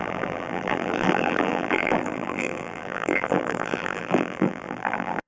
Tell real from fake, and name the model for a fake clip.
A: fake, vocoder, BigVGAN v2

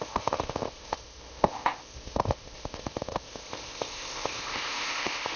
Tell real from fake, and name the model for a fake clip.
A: fake, codec, ZipCodec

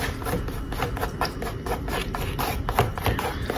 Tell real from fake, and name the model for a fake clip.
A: fake, vocoder, BigVGAN v2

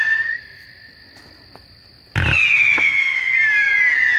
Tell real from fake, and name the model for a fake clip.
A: real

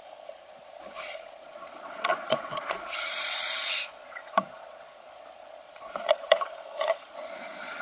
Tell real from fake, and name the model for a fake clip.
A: fake, vocoder, Vocos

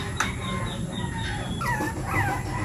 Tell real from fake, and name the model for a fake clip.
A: real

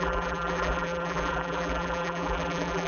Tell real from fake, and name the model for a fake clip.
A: fake, vocoder, BigVGAN v2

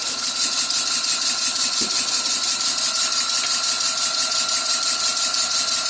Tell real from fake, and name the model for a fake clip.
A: real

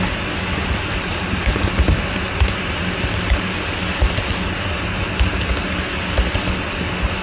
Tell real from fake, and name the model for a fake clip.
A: real